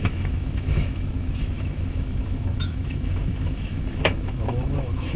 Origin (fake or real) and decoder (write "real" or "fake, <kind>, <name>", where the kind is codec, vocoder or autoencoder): fake, autoencoder, DAC-VAE